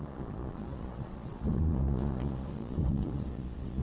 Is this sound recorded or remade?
remade